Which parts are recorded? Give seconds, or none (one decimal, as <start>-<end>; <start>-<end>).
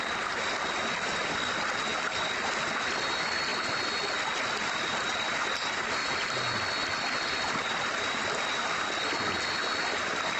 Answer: 0.0-6.0; 9.3-10.4